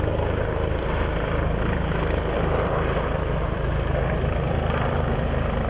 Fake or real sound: fake